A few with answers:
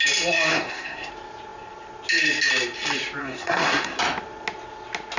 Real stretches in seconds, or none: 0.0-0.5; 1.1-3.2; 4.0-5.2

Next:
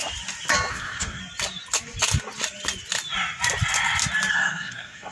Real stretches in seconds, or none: 0.0-0.7; 1.2-4.3